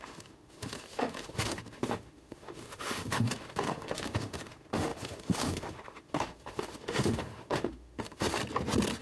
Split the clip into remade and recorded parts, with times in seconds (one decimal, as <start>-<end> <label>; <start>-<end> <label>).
0.0-8.4 remade; 8.4-9.0 recorded